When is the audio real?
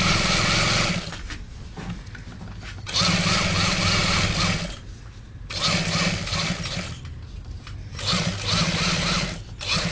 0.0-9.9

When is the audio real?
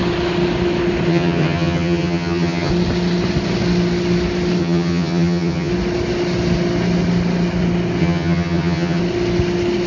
0.0-1.1; 2.7-4.6; 5.7-8.0; 9.0-9.9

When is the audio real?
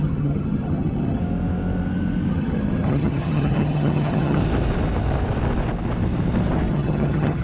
1.2-2.3; 4.4-6.7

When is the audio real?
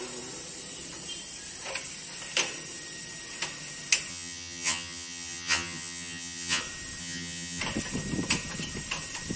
0.0-4.1; 6.6-7.0; 7.6-9.4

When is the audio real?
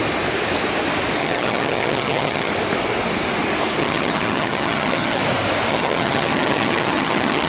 0.0-1.2; 2.5-3.8; 5.2-5.7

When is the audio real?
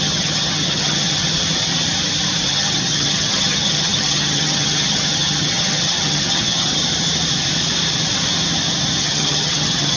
1.2-2.5; 6.8-9.0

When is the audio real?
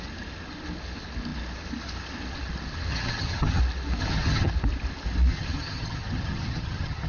0.0-2.9; 3.6-4.0; 4.5-5.3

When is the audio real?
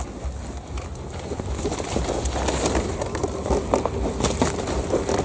0.0-5.2